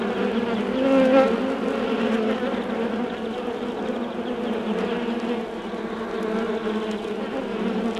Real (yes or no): yes